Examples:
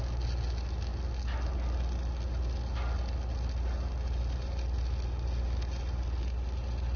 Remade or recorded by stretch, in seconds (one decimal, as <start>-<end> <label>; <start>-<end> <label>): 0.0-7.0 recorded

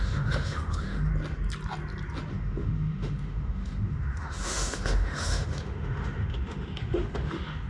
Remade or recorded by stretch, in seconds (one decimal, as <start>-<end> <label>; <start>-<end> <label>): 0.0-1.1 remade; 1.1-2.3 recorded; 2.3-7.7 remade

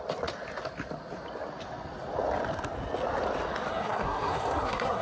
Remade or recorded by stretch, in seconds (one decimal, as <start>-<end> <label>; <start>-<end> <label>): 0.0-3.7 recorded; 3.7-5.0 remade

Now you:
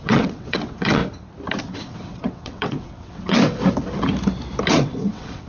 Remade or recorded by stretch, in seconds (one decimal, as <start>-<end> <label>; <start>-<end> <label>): 0.0-1.0 remade; 1.0-1.6 recorded; 1.6-3.6 remade; 3.6-4.7 recorded; 4.7-5.5 remade

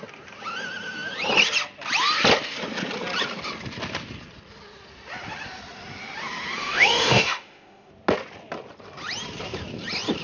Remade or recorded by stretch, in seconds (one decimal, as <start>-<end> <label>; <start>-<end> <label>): 0.0-6.6 recorded; 6.6-7.9 remade; 7.9-10.2 recorded

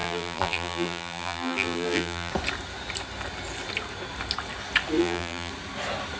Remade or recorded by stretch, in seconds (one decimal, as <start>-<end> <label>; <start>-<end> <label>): 0.0-2.3 remade; 2.3-5.0 recorded; 5.0-5.5 remade; 5.5-6.2 recorded